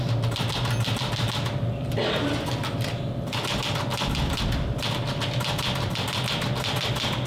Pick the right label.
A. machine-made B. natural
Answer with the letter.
B